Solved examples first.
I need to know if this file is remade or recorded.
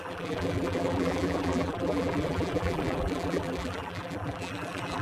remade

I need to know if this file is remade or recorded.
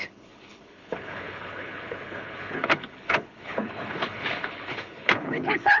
remade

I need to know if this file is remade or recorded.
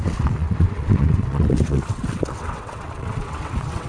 remade